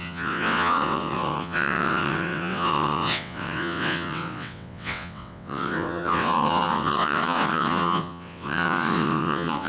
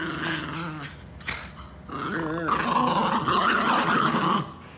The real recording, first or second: second